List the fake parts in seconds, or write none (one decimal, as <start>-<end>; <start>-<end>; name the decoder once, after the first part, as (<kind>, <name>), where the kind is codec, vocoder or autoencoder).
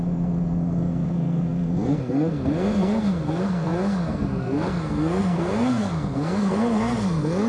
0.0-7.5 (codec, SNAC)